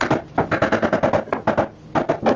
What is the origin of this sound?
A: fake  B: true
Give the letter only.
B